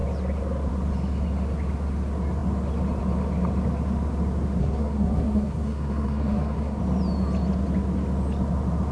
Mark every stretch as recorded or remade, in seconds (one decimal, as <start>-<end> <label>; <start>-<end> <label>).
0.0-4.6 recorded; 4.6-6.8 remade; 6.8-8.9 recorded